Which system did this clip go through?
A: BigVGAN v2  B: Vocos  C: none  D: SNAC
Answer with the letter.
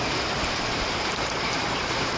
C